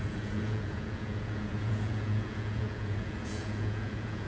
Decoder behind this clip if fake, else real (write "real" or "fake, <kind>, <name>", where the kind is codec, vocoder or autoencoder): fake, vocoder, Vocos